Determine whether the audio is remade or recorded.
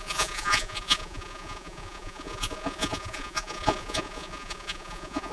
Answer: remade